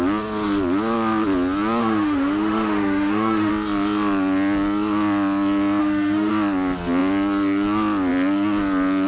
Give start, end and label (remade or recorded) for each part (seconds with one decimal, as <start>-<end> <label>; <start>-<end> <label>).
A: 0.0-1.8 recorded; 1.8-3.5 remade; 3.5-5.8 recorded; 5.8-6.3 remade; 6.3-9.1 recorded

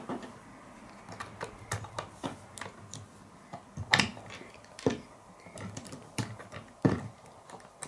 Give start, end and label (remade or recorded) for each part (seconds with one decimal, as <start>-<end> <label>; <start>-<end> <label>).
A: 0.0-7.9 recorded

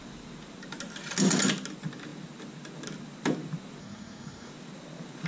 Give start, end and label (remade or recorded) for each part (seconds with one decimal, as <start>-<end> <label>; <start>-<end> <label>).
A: 0.0-3.8 recorded; 3.8-4.5 remade; 4.5-5.3 recorded

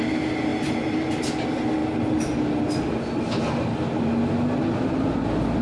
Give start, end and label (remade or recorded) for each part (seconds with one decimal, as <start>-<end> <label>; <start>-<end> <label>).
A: 0.0-0.5 recorded; 0.5-1.3 remade; 1.3-5.6 recorded

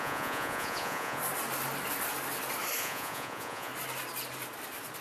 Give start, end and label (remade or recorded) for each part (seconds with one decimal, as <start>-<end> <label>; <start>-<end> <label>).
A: 0.0-1.2 remade; 1.2-2.8 recorded; 2.8-3.7 remade; 3.7-5.0 recorded